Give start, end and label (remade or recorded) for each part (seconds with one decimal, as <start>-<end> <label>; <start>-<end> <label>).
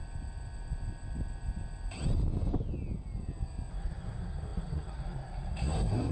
0.0-3.7 recorded; 3.7-6.1 remade